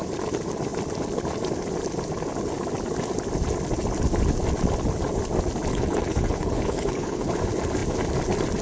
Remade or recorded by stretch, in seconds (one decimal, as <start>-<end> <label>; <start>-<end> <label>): 0.0-5.7 recorded; 5.7-7.3 remade; 7.3-8.6 recorded